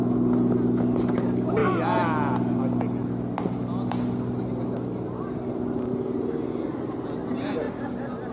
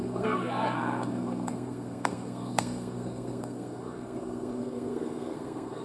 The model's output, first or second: second